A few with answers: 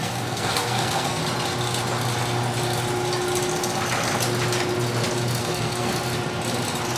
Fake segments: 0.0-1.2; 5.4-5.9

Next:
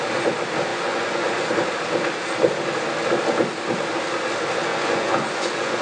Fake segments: 0.7-1.5; 4.7-5.8

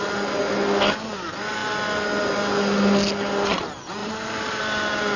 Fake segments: 4.0-4.6

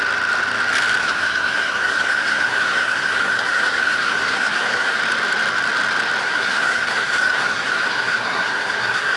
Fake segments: 1.0-5.0; 6.2-9.2